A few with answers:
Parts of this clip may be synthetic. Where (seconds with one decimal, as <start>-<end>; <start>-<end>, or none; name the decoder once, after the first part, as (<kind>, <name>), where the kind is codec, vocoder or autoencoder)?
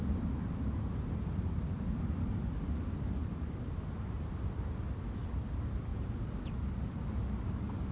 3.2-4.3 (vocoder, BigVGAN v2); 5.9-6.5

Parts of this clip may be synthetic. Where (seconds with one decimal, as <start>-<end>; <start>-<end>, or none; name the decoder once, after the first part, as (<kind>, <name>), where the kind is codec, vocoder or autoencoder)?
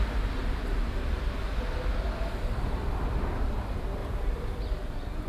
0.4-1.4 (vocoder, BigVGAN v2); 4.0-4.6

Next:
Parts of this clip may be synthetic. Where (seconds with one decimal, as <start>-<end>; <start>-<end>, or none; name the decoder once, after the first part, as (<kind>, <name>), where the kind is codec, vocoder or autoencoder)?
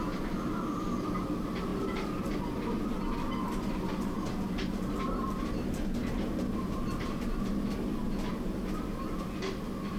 none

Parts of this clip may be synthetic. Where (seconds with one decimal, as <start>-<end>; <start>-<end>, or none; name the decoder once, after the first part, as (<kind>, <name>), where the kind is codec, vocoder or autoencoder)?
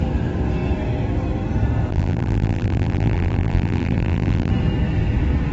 1.9-4.5 (vocoder, BigVGAN v2)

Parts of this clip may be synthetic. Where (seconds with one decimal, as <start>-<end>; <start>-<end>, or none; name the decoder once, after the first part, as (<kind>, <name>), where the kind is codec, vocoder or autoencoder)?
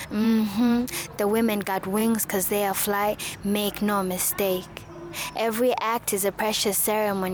0.0-0.8 (vocoder, BigVGAN v2)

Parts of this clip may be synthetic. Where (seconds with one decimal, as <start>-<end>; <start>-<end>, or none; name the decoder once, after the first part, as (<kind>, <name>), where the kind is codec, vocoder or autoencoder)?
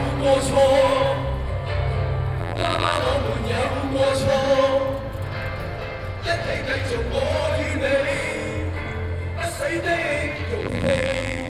2.4-3.0 (vocoder, BigVGAN v2); 10.6-11.5